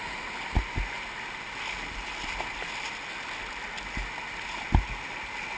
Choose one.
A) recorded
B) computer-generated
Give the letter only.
A